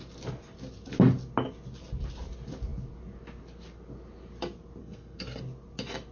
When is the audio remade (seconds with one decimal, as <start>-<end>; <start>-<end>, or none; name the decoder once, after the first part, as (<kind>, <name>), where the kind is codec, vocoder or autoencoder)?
4.8-5.4 (codec, SNAC)